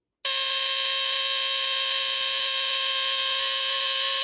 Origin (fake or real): real